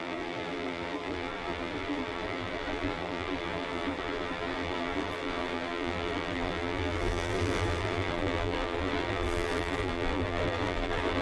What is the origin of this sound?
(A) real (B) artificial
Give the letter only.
B